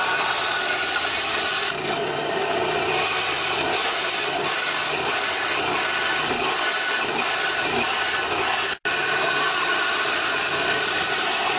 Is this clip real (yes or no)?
yes